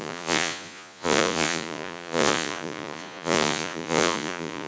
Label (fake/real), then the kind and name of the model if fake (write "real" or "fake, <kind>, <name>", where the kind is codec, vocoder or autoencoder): fake, vocoder, Vocos